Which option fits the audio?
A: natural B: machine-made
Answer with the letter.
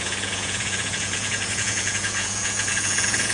B